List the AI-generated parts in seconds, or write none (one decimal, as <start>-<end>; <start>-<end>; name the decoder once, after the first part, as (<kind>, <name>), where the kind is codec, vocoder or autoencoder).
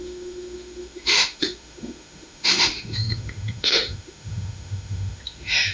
0.0-5.7 (autoencoder, DAC-VAE)